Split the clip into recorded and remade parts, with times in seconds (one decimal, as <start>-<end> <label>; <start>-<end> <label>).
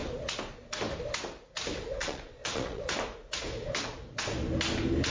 0.0-2.0 recorded; 2.0-2.8 remade; 2.8-5.1 recorded